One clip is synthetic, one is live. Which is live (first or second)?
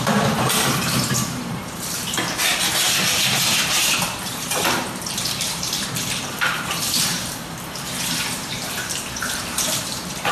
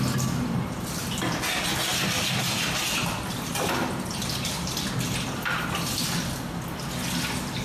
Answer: second